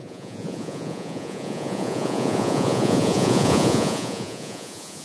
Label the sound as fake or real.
fake